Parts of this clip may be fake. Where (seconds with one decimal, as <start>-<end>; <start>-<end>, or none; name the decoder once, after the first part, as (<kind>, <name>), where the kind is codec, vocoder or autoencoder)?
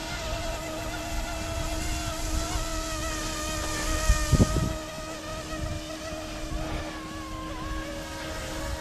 none